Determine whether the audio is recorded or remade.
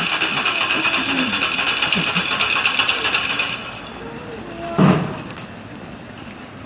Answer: recorded